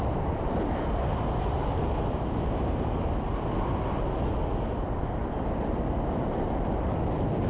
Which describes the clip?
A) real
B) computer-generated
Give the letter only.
A